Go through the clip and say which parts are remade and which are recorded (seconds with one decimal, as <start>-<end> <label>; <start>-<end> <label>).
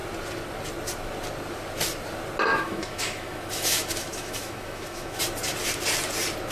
0.0-2.5 recorded; 2.5-5.2 remade; 5.2-6.5 recorded